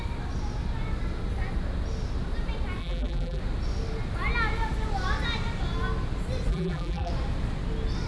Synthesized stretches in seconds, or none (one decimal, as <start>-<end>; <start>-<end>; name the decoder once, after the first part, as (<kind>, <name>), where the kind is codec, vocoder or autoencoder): 2.8-3.4 (vocoder, BigVGAN v2); 6.5-7.1